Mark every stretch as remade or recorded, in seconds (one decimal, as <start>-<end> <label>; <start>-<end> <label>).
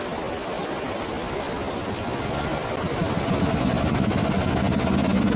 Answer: 0.0-5.4 recorded